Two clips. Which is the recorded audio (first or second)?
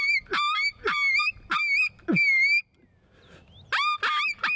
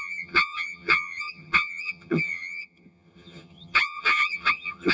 first